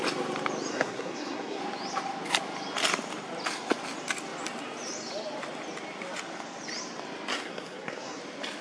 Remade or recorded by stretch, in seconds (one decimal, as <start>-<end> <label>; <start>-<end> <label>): 0.0-0.7 recorded; 0.7-1.6 remade; 1.6-7.3 recorded; 7.3-8.2 remade; 8.2-8.6 recorded